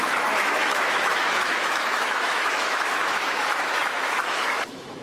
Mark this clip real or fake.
fake